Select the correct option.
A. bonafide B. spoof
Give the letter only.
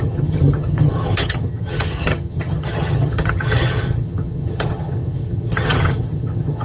B